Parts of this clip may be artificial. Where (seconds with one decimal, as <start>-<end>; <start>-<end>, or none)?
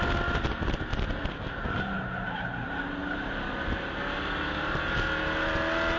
none